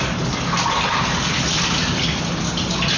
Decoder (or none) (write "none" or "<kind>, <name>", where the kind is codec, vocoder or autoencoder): none